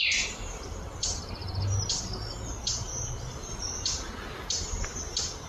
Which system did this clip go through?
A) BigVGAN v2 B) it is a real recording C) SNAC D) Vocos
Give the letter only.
B